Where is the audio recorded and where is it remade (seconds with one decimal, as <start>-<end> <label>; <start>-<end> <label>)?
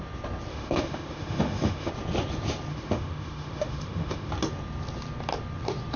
0.0-0.5 recorded; 0.5-1.9 remade; 1.9-2.7 recorded; 2.7-4.3 remade; 4.3-6.0 recorded